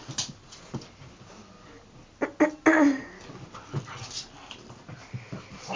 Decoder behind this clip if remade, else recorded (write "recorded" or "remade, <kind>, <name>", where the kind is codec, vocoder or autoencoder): recorded